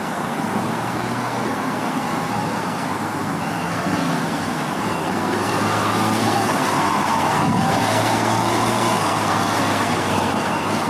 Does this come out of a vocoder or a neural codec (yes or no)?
yes